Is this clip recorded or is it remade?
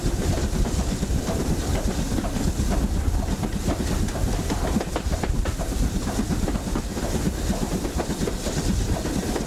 recorded